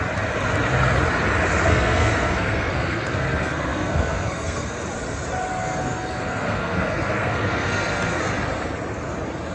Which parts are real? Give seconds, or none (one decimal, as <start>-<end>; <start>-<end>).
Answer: 0.0-1.7; 4.8-5.5; 8.2-9.5